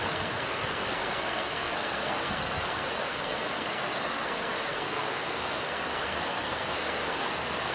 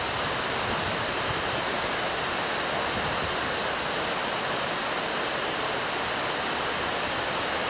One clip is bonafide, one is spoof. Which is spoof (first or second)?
first